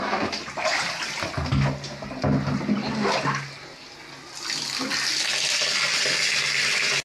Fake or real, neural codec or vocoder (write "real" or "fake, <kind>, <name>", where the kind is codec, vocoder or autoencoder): real